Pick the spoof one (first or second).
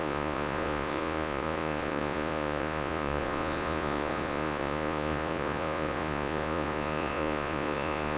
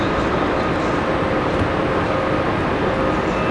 first